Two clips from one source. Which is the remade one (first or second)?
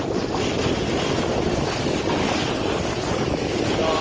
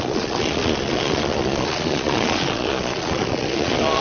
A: second